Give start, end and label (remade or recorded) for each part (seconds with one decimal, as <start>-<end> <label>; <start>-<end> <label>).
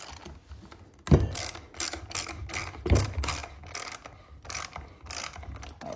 0.0-6.0 recorded